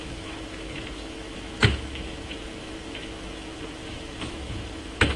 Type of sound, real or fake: fake